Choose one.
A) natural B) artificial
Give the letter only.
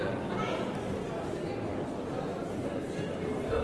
A